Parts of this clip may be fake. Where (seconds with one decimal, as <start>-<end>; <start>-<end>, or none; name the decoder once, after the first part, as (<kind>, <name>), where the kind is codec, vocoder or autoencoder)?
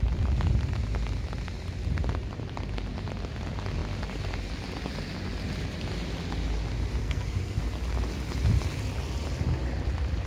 7.0-7.6 (codec, SNAC)